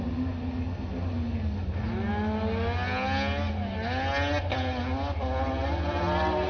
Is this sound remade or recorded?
recorded